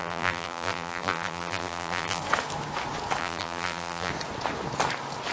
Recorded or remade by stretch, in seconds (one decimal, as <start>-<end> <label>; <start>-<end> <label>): 0.0-2.2 remade; 2.2-3.2 recorded; 3.2-4.1 remade; 4.1-5.3 recorded